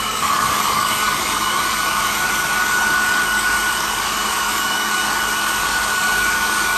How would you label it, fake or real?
fake